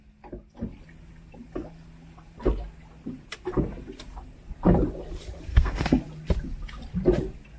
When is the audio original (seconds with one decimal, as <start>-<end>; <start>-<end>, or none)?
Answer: 0.0-5.5; 6.0-7.6